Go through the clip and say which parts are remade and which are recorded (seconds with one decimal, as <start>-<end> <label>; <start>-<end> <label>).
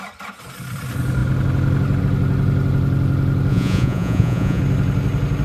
0.0-3.5 recorded; 3.5-4.6 remade; 4.6-5.4 recorded